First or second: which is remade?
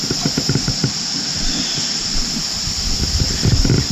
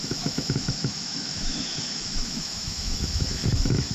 second